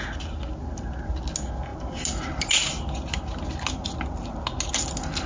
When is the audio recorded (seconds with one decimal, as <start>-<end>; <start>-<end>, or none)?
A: 0.0-5.3